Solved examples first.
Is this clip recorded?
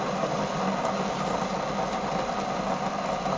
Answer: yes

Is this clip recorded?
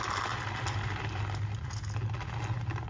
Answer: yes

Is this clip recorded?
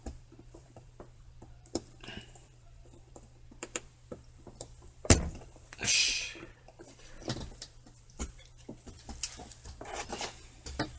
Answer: no